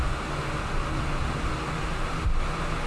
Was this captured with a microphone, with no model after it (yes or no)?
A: yes